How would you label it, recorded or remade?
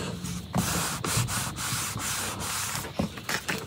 recorded